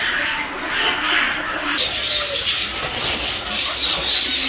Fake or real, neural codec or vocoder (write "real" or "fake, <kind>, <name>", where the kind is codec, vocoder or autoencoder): fake, vocoder, BigVGAN v2